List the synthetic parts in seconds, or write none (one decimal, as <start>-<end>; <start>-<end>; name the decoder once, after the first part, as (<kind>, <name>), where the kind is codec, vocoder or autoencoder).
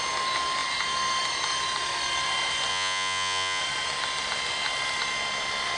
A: 2.7-3.6 (vocoder, Vocos)